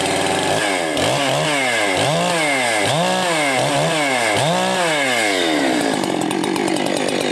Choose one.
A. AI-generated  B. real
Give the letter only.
B